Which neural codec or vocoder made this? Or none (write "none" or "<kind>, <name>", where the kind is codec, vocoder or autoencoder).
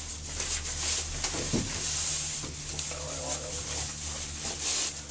none